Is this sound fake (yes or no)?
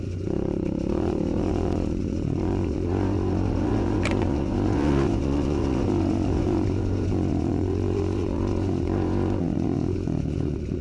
yes